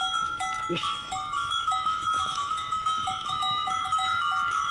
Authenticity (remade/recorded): remade